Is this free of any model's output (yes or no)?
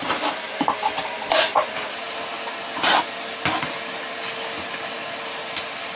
yes